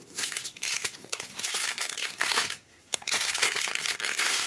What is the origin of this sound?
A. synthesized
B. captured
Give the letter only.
A